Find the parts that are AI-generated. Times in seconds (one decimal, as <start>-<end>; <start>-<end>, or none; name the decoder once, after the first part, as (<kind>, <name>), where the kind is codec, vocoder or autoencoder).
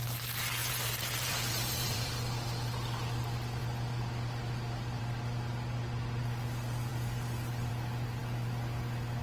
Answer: 0.6-2.1 (vocoder, BigVGAN v2)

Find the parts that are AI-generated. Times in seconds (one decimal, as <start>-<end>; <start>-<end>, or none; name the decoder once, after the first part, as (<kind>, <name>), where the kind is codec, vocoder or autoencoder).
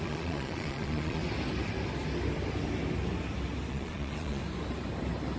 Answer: 0.0-1.2 (vocoder, Vocos); 3.7-4.4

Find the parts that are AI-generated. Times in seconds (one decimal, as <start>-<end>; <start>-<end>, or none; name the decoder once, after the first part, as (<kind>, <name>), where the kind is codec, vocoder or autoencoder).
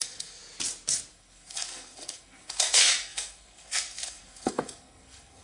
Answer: 0.0-0.4 (codec, SNAC); 1.1-5.4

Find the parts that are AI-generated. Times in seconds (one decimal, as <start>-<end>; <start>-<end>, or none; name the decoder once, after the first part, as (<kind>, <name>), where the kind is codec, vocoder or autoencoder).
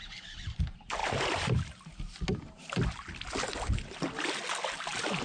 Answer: none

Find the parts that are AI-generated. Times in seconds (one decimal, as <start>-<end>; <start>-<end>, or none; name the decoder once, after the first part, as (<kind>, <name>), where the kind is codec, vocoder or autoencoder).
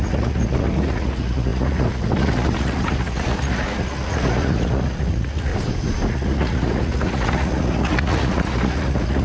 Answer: 0.0-5.5 (vocoder, Vocos); 6.1-9.2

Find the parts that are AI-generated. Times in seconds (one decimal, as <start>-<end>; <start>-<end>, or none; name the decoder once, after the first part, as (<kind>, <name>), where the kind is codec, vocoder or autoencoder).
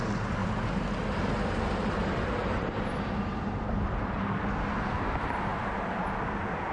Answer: 0.4-3.5 (vocoder, BigVGAN v2); 5.5-6.2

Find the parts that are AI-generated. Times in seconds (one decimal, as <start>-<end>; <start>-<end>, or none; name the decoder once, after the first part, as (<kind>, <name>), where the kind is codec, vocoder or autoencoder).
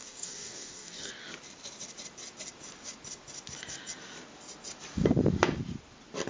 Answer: 0.0-1.1 (codec, DAC)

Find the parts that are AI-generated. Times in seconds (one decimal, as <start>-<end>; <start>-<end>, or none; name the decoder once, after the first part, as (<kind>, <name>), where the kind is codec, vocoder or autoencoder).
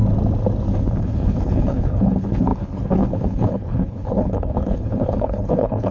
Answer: 1.0-5.9 (codec, HILCodec)